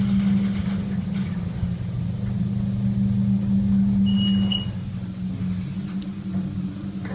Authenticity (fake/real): real